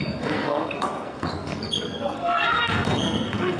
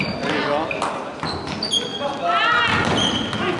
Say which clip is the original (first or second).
second